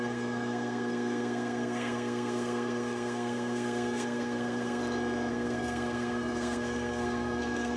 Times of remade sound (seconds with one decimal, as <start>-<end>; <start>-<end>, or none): 0.0-4.8; 5.3-7.8